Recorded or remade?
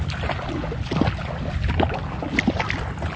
recorded